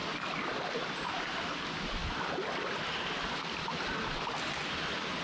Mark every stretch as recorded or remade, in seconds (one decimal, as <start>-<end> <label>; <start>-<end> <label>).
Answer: 0.0-5.2 recorded